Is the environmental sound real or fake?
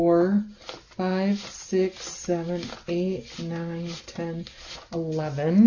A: real